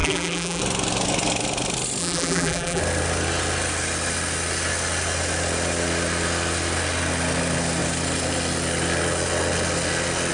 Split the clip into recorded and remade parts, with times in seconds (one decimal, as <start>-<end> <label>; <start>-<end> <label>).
0.0-0.6 remade; 0.6-2.0 recorded; 2.0-2.8 remade; 2.8-10.3 recorded